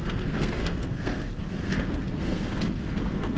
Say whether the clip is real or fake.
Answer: fake